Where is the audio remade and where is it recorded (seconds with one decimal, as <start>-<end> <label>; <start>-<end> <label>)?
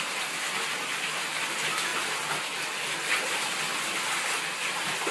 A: 0.0-5.1 recorded